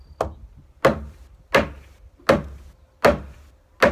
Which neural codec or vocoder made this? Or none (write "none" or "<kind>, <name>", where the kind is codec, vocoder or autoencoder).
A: none